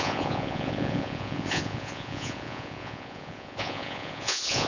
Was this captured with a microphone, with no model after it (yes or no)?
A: no